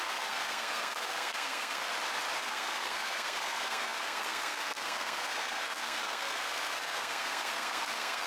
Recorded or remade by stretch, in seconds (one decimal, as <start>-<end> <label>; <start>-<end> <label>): 0.0-1.9 remade; 1.9-2.4 recorded; 2.4-8.3 remade

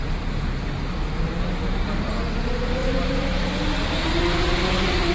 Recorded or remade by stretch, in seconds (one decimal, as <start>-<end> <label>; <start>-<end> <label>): 0.0-5.1 recorded

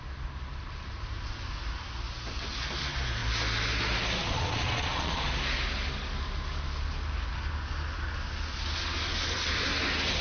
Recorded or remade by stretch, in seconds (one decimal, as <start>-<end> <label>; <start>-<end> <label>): 0.0-4.2 recorded; 4.2-5.3 remade; 5.3-10.2 recorded

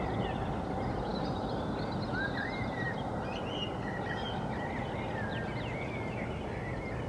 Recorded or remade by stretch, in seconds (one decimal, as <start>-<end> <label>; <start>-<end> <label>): 0.0-7.1 recorded

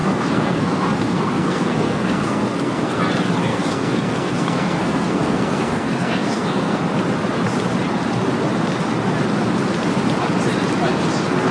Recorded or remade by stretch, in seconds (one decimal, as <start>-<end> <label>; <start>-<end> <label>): 0.0-3.0 remade; 3.0-3.5 recorded; 3.5-6.8 remade; 6.8-11.5 recorded

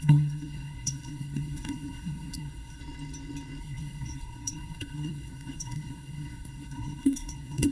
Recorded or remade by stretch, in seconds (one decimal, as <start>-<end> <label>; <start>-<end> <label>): 0.0-2.8 remade; 2.8-3.6 recorded; 3.6-7.7 remade

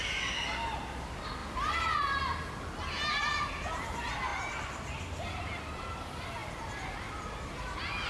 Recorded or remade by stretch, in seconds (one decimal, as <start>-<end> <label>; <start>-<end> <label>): 0.0-8.1 recorded

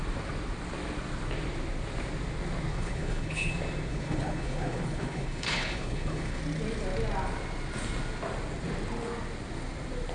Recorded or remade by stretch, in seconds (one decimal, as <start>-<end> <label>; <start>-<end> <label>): 0.0-2.7 recorded; 2.7-3.5 remade; 3.5-3.9 recorded; 3.9-6.4 remade; 6.4-10.1 recorded